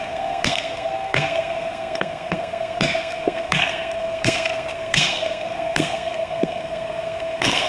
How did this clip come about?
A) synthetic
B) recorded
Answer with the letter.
A